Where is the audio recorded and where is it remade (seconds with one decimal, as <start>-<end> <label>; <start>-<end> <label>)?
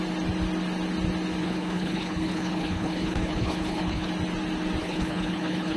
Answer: 0.0-1.4 recorded; 1.4-4.1 remade; 4.1-4.8 recorded; 4.8-5.8 remade